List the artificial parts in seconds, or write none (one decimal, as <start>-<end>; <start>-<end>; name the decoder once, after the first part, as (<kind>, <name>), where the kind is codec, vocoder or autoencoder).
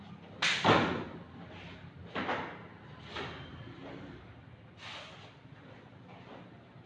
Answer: none